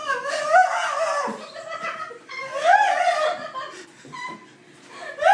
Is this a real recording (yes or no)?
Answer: yes